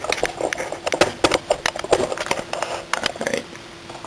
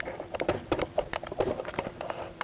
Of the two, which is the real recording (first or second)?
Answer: first